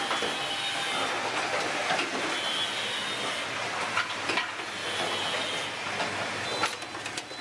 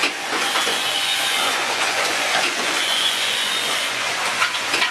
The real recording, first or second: first